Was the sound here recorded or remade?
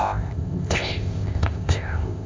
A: remade